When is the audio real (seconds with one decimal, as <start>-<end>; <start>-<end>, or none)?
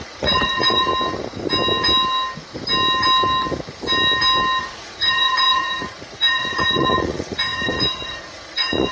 0.9-4.6